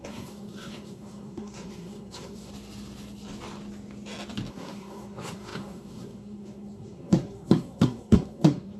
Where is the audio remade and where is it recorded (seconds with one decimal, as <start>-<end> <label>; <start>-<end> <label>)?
0.0-2.5 remade; 2.5-4.5 recorded; 4.5-8.8 remade

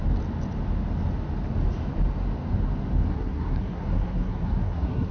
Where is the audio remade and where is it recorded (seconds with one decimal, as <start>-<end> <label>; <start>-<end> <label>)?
0.0-3.1 recorded; 3.1-5.1 remade

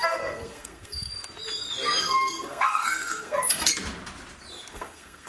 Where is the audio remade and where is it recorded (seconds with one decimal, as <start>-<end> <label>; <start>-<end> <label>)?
0.0-1.1 remade; 1.1-2.0 recorded; 2.0-3.7 remade; 3.7-4.7 recorded; 4.7-5.3 remade

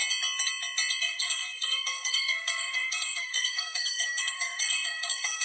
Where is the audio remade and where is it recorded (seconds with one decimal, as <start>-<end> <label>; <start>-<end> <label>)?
0.0-1.0 recorded; 1.0-5.4 remade